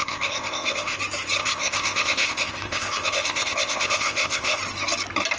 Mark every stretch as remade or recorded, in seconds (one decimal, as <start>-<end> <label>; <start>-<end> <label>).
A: 0.0-1.0 remade; 1.0-1.4 recorded; 1.4-4.6 remade; 4.6-5.4 recorded